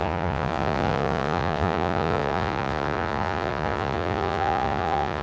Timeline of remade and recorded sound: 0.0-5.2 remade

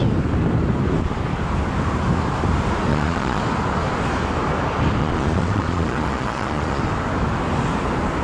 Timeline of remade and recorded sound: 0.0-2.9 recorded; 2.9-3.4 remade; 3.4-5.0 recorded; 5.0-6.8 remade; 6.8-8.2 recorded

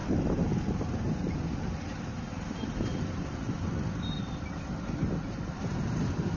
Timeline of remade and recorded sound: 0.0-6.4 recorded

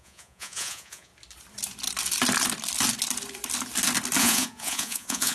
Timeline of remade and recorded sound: 0.0-1.1 remade; 1.1-4.2 recorded; 4.2-5.3 remade

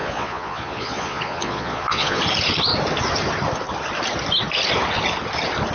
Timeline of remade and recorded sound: 0.0-2.2 remade; 2.2-5.7 recorded

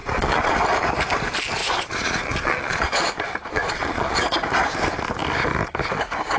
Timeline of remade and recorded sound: 0.0-0.5 remade; 0.5-1.6 recorded; 1.6-3.1 remade; 3.1-3.5 recorded; 3.5-4.2 remade; 4.2-6.4 recorded

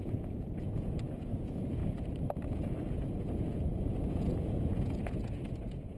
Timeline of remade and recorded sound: 0.0-1.8 remade; 1.8-2.9 recorded; 2.9-6.0 remade

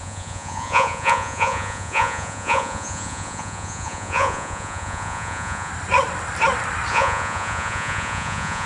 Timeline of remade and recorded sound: 0.0-5.7 remade; 5.7-6.9 recorded; 6.9-8.7 remade